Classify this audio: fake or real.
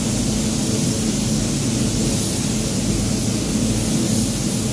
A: real